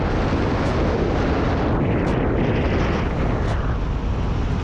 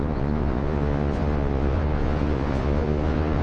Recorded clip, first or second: first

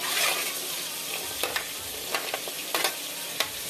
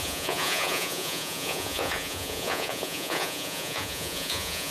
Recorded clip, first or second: first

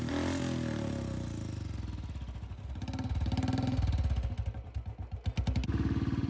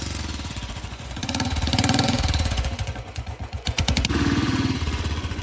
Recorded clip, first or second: first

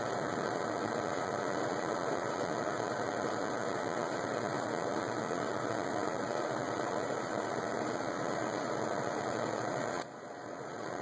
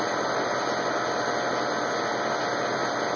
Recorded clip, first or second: second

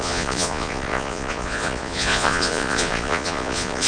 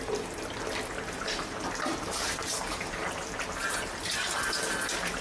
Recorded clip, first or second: second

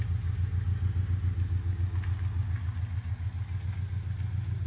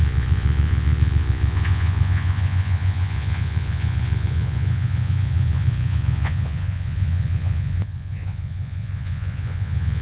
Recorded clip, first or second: first